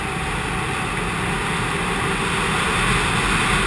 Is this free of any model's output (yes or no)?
yes